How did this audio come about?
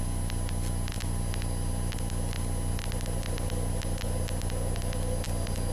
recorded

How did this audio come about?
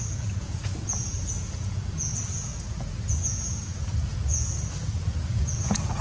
remade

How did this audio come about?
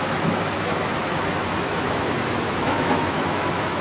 remade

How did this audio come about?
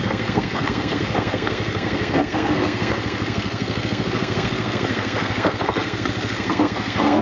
remade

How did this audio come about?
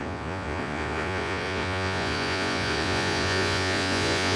remade